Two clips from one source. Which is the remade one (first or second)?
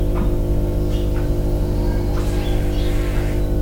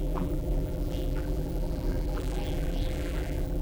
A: second